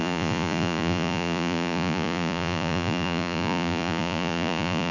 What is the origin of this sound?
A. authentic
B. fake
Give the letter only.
B